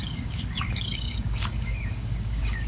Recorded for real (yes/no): no